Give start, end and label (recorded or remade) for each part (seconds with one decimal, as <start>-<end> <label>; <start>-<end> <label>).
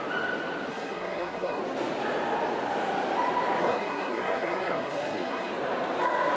0.0-0.7 recorded; 0.7-1.6 remade; 1.6-3.6 recorded; 3.6-5.5 remade; 5.5-6.4 recorded